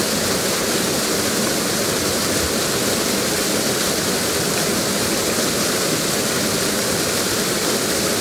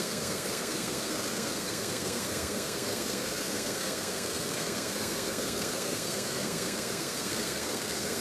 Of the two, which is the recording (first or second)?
first